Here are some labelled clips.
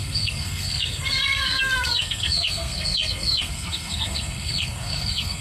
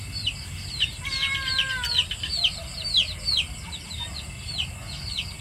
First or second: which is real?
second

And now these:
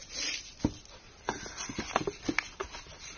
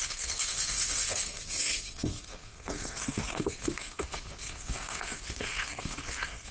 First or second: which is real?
first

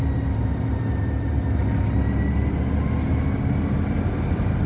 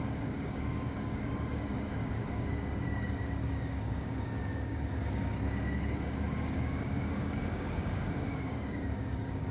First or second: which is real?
first